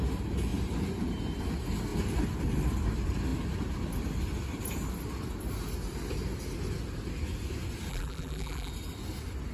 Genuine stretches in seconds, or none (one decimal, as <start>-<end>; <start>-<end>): 0.0-7.9; 8.7-9.5